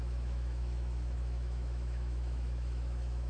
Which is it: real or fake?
fake